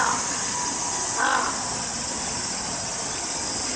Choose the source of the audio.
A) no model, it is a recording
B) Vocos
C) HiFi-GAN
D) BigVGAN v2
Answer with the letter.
A